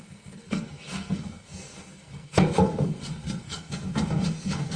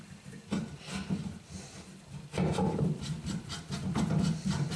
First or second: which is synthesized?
first